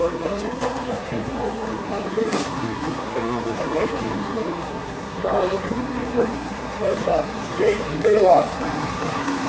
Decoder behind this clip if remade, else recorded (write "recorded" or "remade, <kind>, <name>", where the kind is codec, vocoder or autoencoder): remade, codec, SNAC